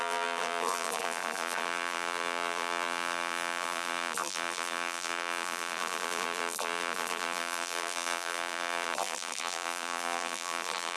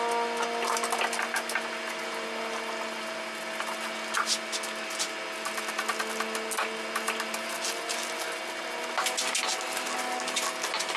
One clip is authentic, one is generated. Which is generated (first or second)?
first